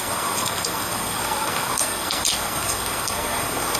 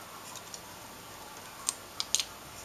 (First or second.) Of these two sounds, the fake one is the first